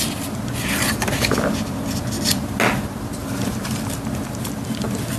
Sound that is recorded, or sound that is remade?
recorded